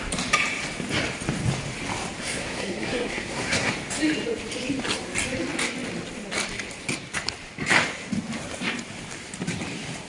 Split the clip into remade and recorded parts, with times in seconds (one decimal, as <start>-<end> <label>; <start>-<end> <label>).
0.0-2.2 recorded; 2.2-3.7 remade; 3.7-10.1 recorded